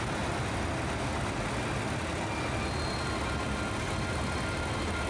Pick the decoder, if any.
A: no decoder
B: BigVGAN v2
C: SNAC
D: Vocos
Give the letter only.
A